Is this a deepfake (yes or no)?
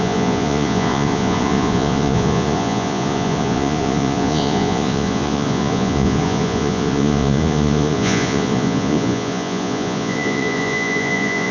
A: yes